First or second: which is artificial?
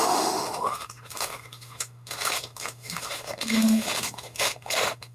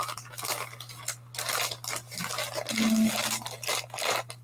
first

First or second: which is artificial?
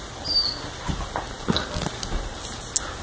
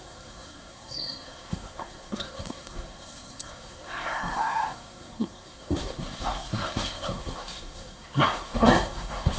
second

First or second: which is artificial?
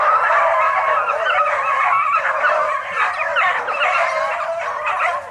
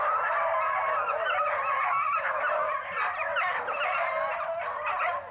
first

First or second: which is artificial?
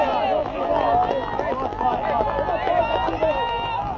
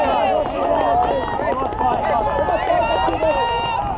first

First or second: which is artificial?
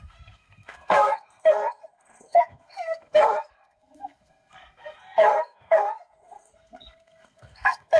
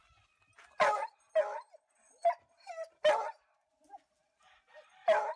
first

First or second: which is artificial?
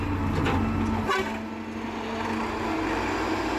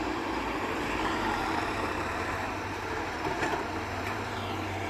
second